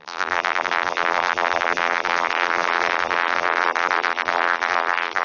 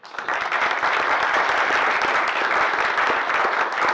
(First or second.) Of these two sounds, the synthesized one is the first